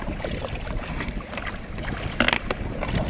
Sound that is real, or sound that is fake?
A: real